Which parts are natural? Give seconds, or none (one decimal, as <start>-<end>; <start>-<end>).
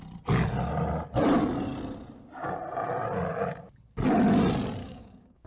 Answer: 0.0-4.8